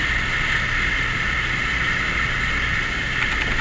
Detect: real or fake real